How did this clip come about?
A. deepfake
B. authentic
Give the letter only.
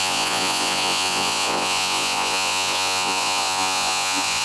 A